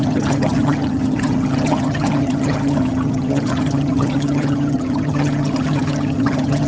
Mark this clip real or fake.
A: fake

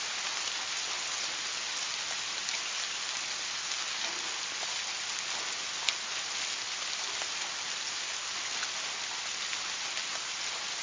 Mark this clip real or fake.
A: real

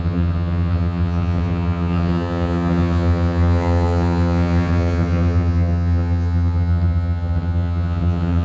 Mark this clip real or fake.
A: fake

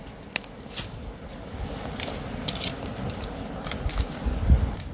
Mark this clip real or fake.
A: real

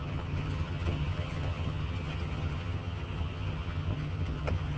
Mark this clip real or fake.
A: fake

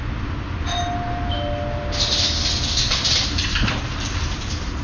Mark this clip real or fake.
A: real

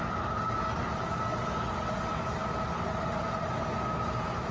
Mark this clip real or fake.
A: real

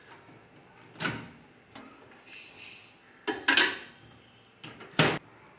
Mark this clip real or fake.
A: real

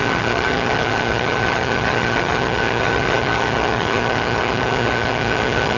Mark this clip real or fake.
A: fake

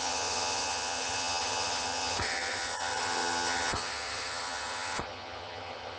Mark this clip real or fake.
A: fake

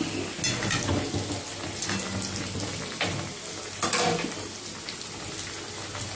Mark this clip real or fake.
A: real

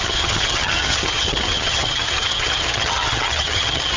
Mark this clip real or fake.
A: fake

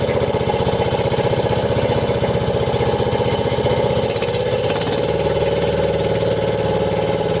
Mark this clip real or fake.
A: real